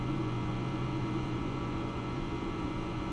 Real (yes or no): no